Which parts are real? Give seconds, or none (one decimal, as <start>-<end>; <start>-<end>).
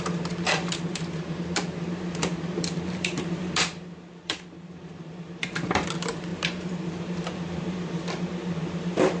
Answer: none